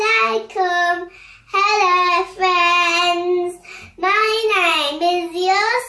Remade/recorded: recorded